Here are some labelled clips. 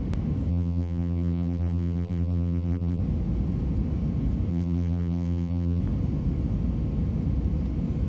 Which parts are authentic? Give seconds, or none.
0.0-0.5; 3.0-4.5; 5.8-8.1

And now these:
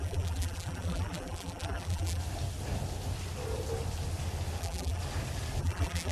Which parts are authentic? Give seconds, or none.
2.2-4.6; 5.0-5.6

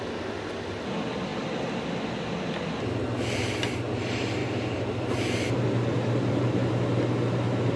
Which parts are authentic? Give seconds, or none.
0.0-4.4; 6.7-7.8

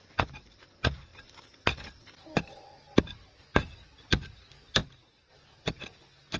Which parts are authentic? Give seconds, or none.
0.0-1.1; 3.0-6.4

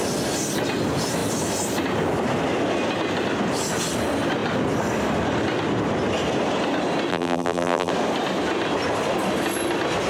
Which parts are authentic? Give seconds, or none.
0.0-7.1; 7.9-10.1

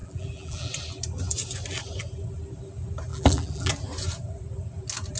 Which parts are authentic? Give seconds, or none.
0.7-3.1; 3.7-5.2

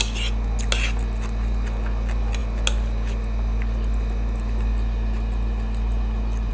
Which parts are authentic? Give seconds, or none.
0.0-6.5

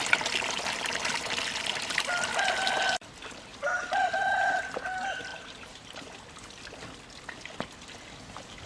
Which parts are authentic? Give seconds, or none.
0.0-3.5; 4.6-5.3; 6.6-8.7